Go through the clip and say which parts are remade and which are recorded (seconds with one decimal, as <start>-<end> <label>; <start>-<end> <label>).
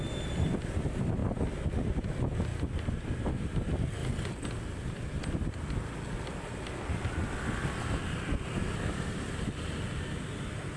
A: 0.0-10.8 recorded